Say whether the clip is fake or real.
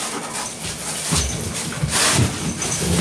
real